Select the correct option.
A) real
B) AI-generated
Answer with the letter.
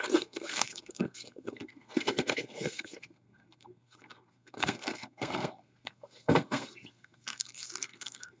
B